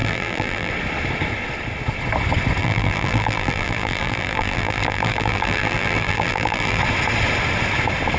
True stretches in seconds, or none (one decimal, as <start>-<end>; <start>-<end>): 0.7-2.6; 6.8-8.2

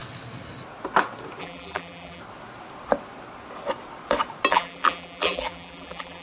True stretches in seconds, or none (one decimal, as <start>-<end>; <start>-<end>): 0.0-1.4; 2.2-4.5

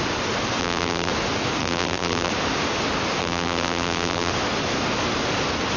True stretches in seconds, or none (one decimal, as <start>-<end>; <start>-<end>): 0.0-0.6; 1.1-1.6; 2.3-3.2; 4.3-5.8

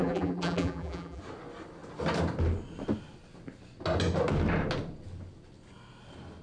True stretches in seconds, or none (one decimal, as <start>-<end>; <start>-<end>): 1.2-6.4

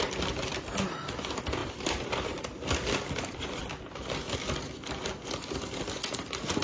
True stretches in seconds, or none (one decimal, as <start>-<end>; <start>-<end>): 0.0-1.6; 2.4-6.6

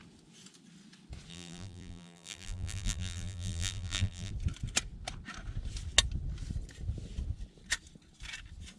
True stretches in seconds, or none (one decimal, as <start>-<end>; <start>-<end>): 0.0-1.3; 4.3-8.8

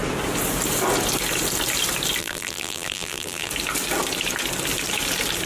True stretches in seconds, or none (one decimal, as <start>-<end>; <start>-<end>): 0.0-2.2; 3.5-5.5